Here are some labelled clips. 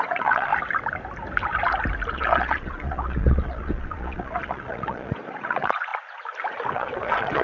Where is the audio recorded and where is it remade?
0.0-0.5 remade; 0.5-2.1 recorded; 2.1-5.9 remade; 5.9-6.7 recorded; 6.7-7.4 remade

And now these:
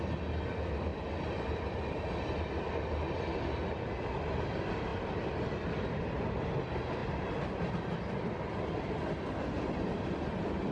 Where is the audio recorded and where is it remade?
0.0-10.7 recorded

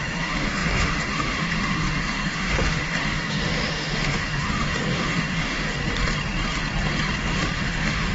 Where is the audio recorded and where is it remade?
0.0-5.8 remade; 5.8-7.2 recorded; 7.2-8.1 remade

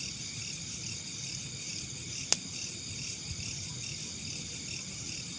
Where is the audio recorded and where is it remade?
0.0-5.4 recorded

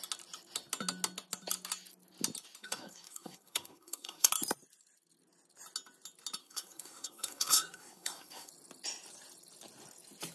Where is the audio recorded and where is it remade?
0.0-2.6 recorded; 2.6-4.3 remade; 4.3-6.4 recorded; 6.4-8.5 remade; 8.5-10.3 recorded